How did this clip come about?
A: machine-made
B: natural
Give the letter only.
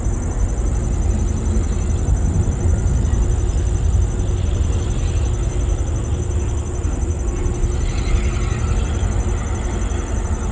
B